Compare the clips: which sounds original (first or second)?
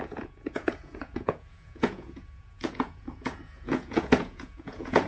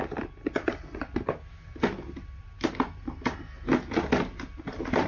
second